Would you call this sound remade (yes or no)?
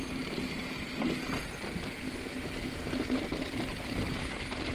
no